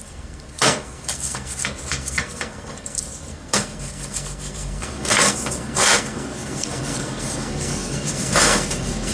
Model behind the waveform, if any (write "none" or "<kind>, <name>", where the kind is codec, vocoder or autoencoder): codec, SNAC